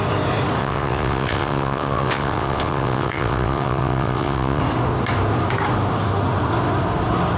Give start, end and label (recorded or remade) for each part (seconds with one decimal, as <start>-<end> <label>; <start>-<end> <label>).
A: 0.0-0.6 recorded; 0.6-4.6 remade; 4.6-7.4 recorded